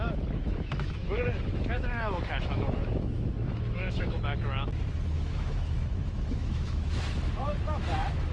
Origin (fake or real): fake